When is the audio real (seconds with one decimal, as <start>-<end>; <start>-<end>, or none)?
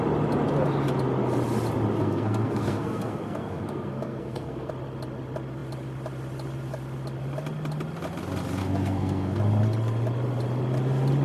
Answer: 0.0-2.0; 4.7-8.6; 9.4-11.2